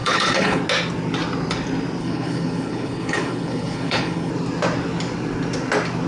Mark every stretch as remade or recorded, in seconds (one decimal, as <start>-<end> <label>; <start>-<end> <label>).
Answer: 0.0-0.6 remade; 0.6-2.0 recorded; 2.0-4.3 remade; 4.3-6.1 recorded